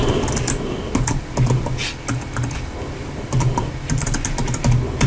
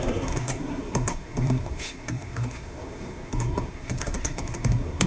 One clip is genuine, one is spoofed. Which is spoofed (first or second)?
second